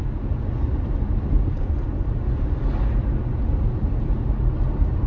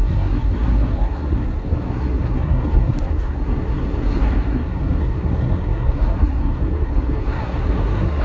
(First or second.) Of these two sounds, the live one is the first